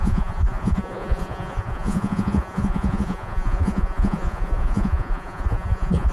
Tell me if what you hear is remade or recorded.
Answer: remade